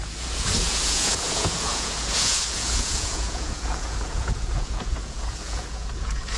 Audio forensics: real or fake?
fake